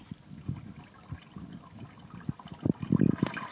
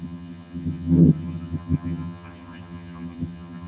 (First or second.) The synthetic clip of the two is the second